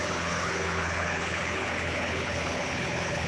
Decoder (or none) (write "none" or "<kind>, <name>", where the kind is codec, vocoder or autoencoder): codec, HILCodec